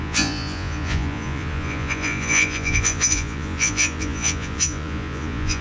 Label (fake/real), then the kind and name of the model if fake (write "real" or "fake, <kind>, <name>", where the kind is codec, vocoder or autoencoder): fake, vocoder, Vocos